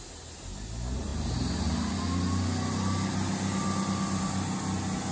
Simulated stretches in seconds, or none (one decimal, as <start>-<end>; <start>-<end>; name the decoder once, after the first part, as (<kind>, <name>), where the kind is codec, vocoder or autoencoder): none